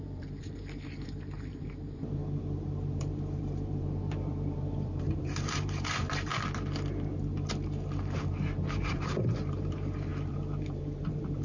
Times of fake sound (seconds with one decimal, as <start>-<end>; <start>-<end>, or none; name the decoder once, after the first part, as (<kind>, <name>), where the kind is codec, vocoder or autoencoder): 0.0-2.2 (vocoder, BigVGAN v2); 2.9-6.3; 8.9-11.4